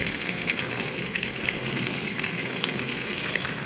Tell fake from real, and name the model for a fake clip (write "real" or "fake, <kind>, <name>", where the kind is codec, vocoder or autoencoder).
fake, codec, SNAC